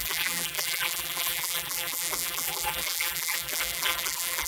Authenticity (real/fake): fake